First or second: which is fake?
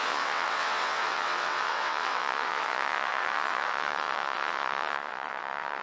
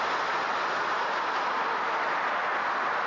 first